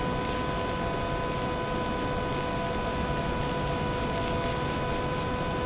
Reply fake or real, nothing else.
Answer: real